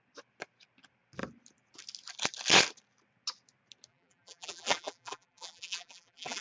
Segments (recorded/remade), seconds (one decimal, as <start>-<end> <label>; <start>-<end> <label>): 0.0-3.9 recorded; 3.9-6.4 remade